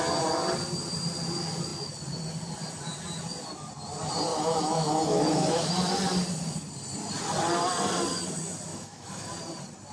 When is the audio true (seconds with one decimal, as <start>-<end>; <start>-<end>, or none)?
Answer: 0.0-4.3; 5.7-8.7; 9.3-9.9